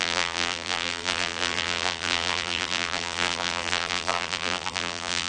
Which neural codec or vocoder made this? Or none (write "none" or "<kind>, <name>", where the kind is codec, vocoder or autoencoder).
vocoder, BigVGAN v2